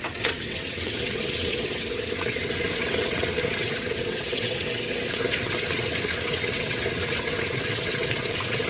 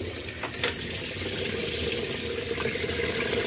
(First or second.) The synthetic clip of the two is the first